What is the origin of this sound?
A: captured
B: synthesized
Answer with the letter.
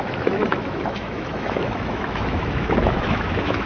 B